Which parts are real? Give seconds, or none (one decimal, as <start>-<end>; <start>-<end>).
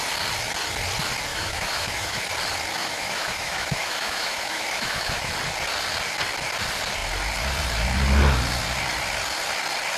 0.0-1.3; 2.2-2.8; 5.3-10.0